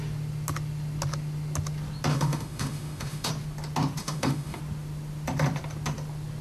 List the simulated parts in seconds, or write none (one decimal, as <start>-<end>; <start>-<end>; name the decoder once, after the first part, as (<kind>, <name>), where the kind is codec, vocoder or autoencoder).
2.1-3.3 (autoencoder, DAC-VAE); 4.0-4.6